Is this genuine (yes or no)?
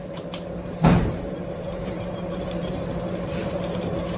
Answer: no